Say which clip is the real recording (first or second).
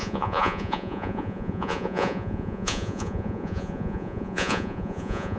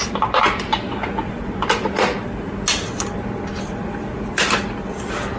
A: second